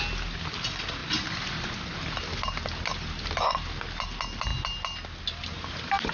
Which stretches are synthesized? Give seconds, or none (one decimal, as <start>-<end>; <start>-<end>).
none